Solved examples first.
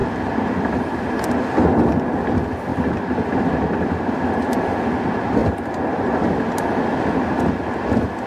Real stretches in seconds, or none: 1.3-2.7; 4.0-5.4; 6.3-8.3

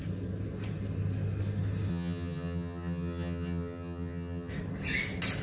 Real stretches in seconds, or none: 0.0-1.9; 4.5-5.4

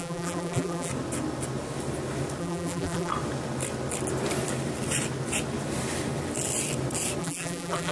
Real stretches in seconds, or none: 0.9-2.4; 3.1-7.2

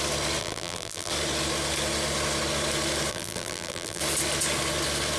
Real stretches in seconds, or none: 0.0-0.4; 1.1-3.1; 4.0-5.2

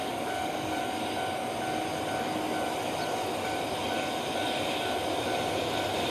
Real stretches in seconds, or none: 0.8-6.1

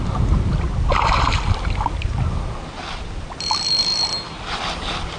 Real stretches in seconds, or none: 0.0-5.2